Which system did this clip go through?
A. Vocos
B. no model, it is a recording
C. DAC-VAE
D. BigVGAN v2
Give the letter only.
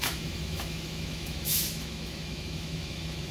C